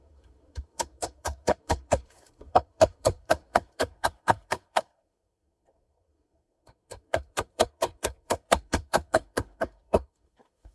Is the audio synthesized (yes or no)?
yes